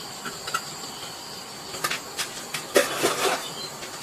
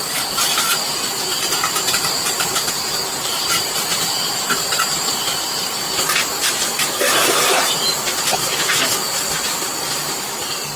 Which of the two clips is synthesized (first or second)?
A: second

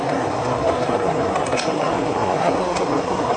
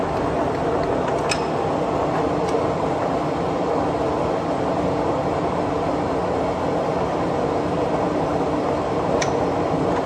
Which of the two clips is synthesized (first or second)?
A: first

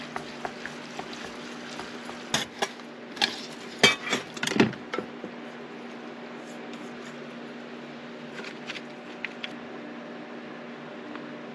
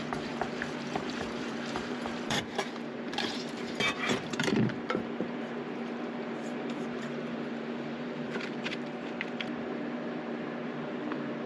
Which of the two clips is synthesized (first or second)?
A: second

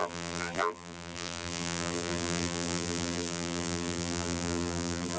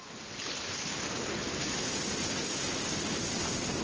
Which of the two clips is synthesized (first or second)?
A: first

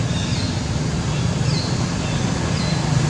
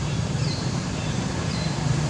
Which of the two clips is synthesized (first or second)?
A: second